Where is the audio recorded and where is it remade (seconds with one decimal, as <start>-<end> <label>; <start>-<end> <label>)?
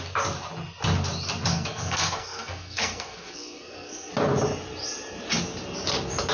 0.0-1.5 recorded; 1.5-4.1 remade; 4.1-6.3 recorded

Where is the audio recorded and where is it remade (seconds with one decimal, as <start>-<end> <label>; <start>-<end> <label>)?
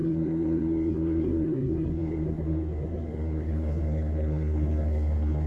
0.0-5.5 remade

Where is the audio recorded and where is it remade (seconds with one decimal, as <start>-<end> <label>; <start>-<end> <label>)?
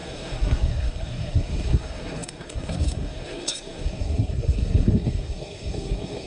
0.0-6.3 remade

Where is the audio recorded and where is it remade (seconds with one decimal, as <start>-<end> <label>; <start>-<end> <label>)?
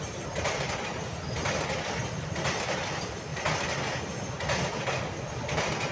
0.0-5.9 recorded